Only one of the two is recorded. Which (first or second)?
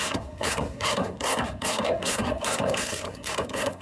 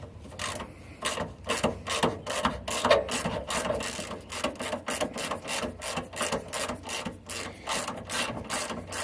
second